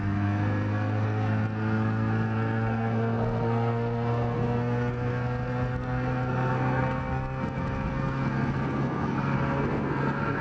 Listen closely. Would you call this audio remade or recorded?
remade